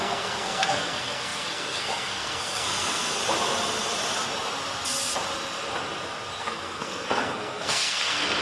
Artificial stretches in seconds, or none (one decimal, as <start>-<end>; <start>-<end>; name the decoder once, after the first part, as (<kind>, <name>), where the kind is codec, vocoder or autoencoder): 0.0-3.2 (codec, SNAC); 6.4-8.4